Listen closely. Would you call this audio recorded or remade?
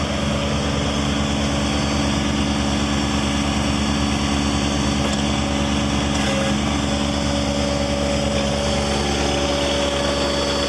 recorded